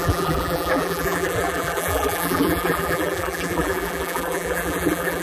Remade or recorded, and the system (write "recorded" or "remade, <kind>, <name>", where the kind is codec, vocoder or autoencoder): remade, vocoder, BigVGAN v2